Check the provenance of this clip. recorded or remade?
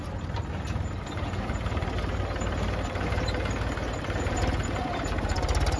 remade